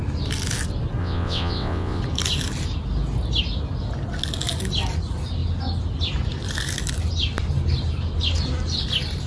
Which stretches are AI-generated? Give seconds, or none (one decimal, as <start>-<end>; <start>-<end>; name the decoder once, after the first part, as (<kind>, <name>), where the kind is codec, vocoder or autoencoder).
1.0-2.0 (vocoder, WaveNeXt)